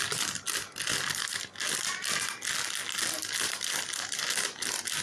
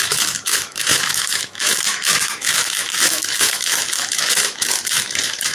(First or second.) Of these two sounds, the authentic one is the first